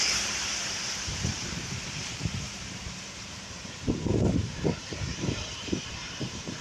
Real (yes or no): no